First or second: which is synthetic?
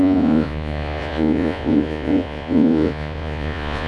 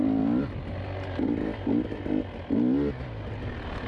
first